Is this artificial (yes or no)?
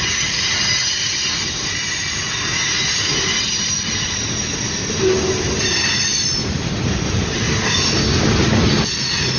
no